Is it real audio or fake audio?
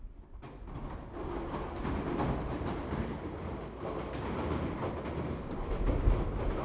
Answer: real